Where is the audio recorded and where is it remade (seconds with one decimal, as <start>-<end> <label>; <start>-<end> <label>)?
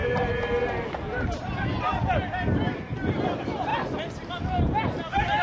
0.0-5.4 recorded